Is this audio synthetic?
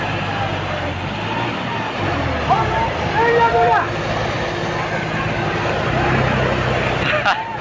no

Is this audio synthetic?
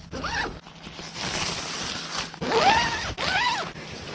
no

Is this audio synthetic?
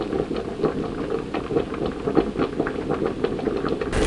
no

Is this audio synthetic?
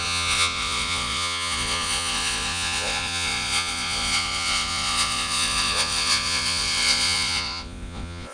yes